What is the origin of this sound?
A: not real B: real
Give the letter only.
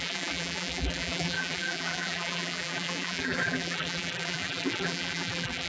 A